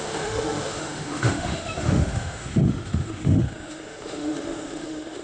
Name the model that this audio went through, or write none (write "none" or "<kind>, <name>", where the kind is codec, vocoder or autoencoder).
autoencoder, DAC-VAE